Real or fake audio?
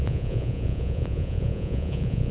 fake